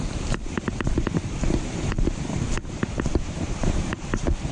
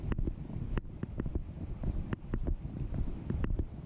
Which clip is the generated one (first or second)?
first